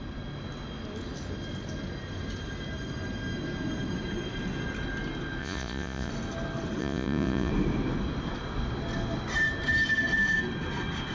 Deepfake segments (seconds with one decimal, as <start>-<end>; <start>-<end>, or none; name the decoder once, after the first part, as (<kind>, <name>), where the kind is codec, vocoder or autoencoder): 5.4-6.1 (vocoder, Vocos); 6.8-7.5